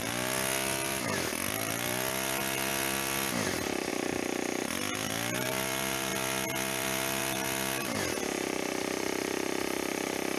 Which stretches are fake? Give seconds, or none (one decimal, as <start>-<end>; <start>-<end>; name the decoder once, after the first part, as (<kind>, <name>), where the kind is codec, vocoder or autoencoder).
0.0-2.7 (vocoder, BigVGAN v2); 3.9-10.4